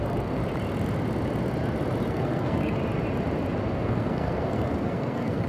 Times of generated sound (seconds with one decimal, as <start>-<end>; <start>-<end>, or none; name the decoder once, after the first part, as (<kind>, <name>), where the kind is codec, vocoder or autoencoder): 0.0-0.4 (codec, SNAC); 2.1-2.8; 3.7-5.5